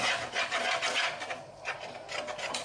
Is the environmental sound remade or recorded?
recorded